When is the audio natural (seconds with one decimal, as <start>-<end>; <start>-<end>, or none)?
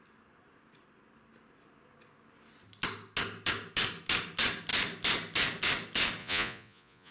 0.0-6.2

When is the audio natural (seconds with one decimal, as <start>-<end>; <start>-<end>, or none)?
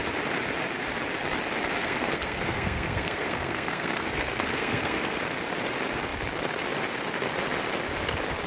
0.0-1.8; 5.2-8.5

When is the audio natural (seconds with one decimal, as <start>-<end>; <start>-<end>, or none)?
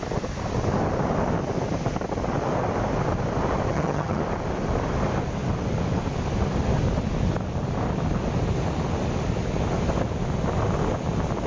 0.0-3.7; 4.2-11.5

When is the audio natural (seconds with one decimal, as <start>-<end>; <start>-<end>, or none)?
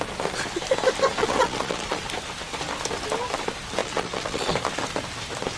0.0-1.2; 2.0-3.8; 4.5-5.6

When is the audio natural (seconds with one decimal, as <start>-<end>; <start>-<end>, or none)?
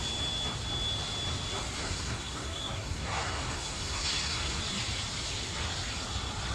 0.0-1.8; 4.6-6.5